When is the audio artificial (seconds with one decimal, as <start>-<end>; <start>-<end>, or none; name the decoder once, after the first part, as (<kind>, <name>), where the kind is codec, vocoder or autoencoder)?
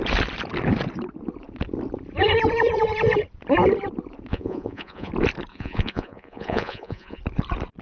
4.3-5.1 (vocoder, Vocos); 5.5-7.2